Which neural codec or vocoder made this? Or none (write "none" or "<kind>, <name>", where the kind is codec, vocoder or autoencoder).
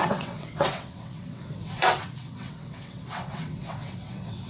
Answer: vocoder, WaveNeXt